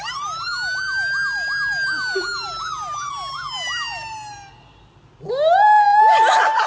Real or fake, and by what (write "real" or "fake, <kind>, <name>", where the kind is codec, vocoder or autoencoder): real